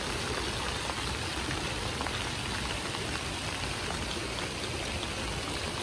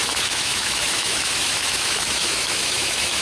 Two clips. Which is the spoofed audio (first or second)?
second